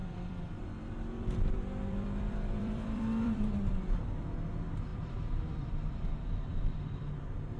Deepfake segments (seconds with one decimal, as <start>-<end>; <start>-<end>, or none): 0.0-4.5; 4.9-6.0; 6.5-7.6